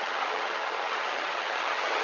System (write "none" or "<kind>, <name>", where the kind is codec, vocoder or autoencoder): vocoder, HiFi-GAN